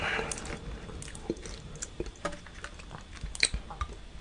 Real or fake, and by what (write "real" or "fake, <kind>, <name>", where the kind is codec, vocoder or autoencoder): real